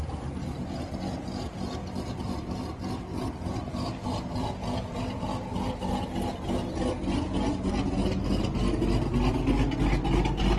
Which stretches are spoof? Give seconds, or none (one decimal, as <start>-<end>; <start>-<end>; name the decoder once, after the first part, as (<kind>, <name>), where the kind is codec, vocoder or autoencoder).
none